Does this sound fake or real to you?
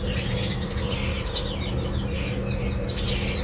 real